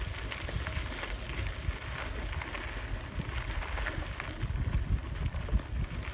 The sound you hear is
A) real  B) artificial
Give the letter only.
A